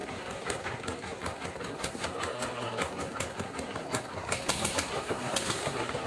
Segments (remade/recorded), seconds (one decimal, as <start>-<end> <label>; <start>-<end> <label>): 0.0-6.1 remade